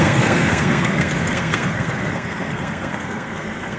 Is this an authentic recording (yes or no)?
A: no